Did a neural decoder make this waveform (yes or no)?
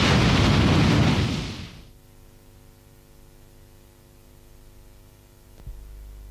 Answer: no